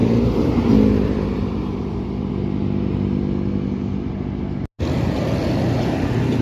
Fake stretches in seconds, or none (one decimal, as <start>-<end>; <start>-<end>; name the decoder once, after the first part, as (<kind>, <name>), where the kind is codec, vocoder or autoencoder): 0.0-2.3 (vocoder, BigVGAN v2)